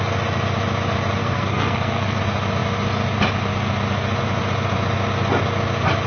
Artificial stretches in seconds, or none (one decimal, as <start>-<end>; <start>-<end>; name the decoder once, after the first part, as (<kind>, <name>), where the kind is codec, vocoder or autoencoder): 1.2-2.2 (codec, SNAC)